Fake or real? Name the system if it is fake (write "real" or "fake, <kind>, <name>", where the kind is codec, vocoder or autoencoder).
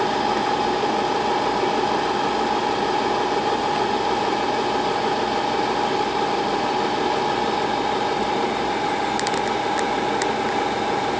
real